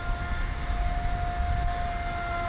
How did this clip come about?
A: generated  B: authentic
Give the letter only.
B